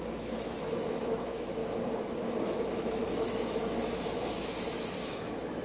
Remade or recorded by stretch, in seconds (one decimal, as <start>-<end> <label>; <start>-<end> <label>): 0.0-1.6 remade; 1.6-2.4 recorded; 2.4-5.6 remade